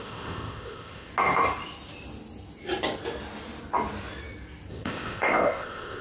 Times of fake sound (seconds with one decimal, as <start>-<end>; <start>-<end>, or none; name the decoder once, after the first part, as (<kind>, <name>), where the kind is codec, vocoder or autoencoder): 0.0-1.1 (codec, ZipCodec); 4.7-6.0